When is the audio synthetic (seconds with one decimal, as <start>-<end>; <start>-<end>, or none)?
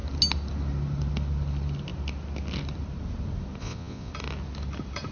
3.6-4.1